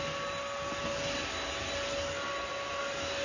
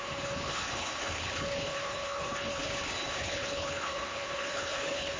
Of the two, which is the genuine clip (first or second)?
first